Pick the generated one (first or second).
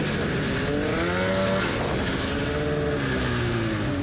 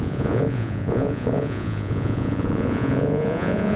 second